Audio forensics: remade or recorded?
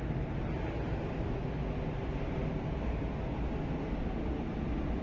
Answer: recorded